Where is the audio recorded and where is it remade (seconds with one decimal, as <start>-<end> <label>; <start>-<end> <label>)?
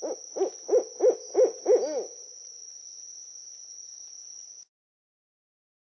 0.0-6.0 recorded